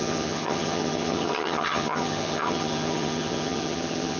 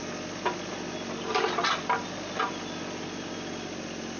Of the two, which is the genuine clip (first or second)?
second